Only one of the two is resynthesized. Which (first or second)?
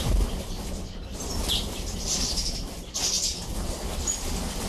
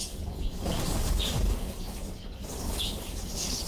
second